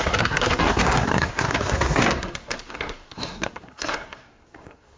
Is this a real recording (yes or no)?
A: no